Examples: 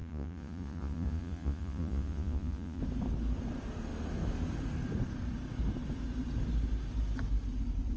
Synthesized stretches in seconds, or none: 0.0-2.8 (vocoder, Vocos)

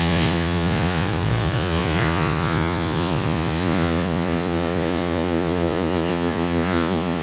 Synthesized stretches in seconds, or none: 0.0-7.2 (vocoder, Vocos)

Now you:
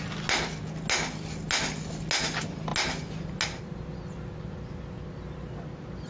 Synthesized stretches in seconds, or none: none

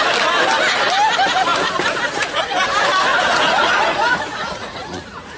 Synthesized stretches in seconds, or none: 3.1-5.4 (vocoder, Vocos)

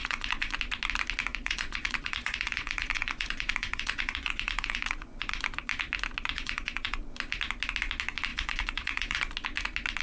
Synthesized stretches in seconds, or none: 0.0-0.6 (vocoder, Vocos); 1.3-5.4; 6.3-7.0; 8.3-9.3

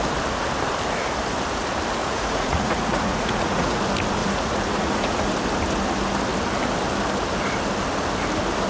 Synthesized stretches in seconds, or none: 2.0-3.8 (vocoder, Vocos); 4.2-5.3

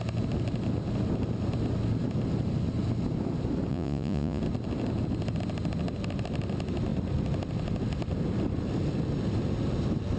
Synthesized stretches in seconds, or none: 3.7-4.4 (vocoder, Vocos)

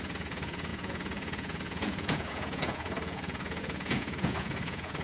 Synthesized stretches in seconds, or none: 0.0-5.0 (vocoder, Vocos)